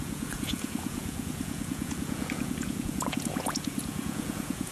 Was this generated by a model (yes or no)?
yes